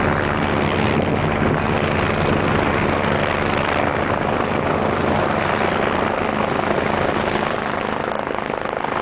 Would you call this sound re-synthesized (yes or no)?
no